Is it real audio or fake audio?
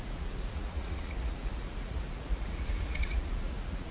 fake